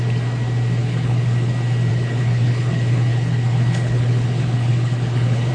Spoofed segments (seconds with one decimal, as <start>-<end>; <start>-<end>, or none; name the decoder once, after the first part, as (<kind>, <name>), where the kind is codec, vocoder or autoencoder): 0.8-1.5 (codec, HILCodec); 1.9-5.5